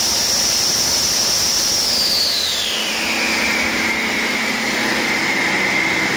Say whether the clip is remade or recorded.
recorded